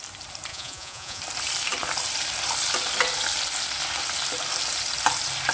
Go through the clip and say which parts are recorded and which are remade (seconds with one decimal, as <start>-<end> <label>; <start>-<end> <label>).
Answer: 0.0-0.5 recorded; 0.5-1.2 remade; 1.2-5.5 recorded

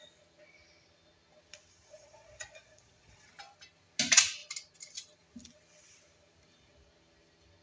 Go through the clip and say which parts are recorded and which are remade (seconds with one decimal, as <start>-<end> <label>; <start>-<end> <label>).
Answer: 0.0-1.8 recorded; 1.8-3.3 remade; 3.3-7.6 recorded

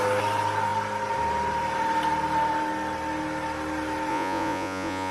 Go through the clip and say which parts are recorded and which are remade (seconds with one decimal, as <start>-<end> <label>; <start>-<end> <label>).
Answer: 0.0-4.1 recorded; 4.1-5.1 remade

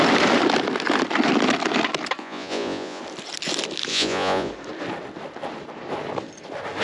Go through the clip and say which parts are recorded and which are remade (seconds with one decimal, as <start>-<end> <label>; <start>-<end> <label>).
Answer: 0.0-2.2 recorded; 2.2-3.0 remade; 3.0-3.9 recorded; 3.9-4.5 remade; 4.5-6.8 recorded

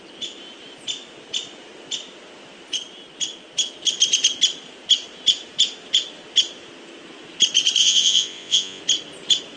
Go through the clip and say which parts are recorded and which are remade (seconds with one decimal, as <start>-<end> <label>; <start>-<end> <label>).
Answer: 0.0-7.8 recorded; 7.8-8.8 remade; 8.8-9.6 recorded

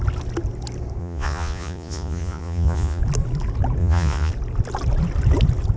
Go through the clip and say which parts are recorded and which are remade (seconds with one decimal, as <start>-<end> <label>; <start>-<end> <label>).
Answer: 0.0-1.0 recorded; 1.0-3.0 remade; 3.0-3.8 recorded; 3.8-4.3 remade; 4.3-5.8 recorded

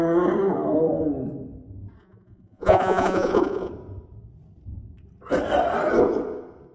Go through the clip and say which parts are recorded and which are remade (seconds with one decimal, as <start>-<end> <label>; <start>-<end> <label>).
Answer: 0.0-2.0 recorded; 2.0-3.7 remade; 3.7-6.7 recorded